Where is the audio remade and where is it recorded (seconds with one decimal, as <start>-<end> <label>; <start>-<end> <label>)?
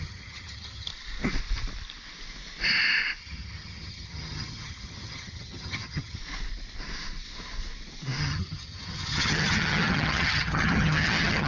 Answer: 0.0-0.9 remade; 0.9-3.2 recorded; 3.2-6.2 remade; 6.2-8.2 recorded; 8.2-11.5 remade